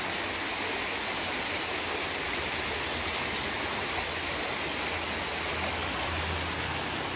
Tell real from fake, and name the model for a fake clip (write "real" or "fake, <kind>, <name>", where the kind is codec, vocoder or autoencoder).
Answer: real